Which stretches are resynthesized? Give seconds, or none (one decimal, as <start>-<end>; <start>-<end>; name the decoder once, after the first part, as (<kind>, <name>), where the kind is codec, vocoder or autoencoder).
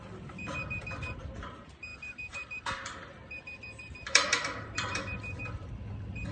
1.9-5.7 (vocoder, BigVGAN v2)